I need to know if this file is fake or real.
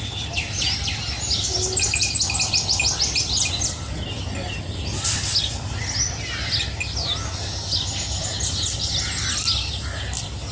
real